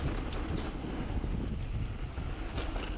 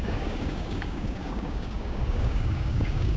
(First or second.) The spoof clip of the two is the second